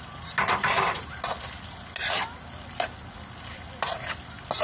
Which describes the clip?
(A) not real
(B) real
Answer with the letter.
B